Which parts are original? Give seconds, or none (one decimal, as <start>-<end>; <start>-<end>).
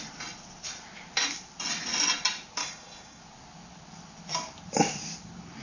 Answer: 0.0-2.6; 3.2-5.6